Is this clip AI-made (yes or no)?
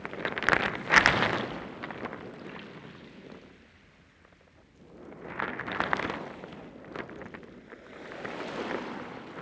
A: no